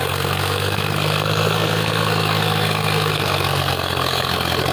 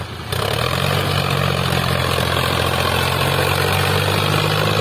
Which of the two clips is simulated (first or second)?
first